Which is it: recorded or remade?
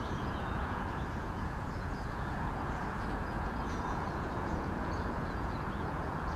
remade